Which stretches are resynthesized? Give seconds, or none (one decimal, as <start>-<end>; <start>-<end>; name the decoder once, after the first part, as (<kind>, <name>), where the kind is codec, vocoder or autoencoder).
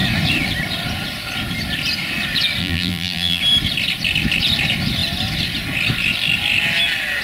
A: 2.6-3.4 (vocoder, BigVGAN v2)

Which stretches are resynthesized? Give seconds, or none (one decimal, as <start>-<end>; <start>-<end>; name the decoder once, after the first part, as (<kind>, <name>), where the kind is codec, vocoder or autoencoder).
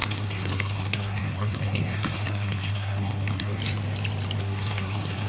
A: 0.0-3.6 (codec, SNAC); 4.4-5.3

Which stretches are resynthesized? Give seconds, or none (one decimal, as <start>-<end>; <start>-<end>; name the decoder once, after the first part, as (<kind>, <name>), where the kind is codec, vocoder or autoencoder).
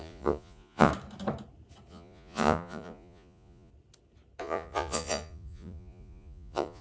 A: 0.0-0.9 (vocoder, Vocos); 1.9-3.7; 4.4-6.8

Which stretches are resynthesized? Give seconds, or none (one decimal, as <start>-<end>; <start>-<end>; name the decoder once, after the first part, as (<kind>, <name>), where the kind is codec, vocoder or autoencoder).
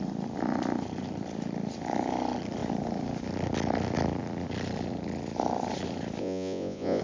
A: 6.2-7.0 (vocoder, Vocos)